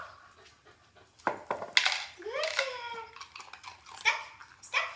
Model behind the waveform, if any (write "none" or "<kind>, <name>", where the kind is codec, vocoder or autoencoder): none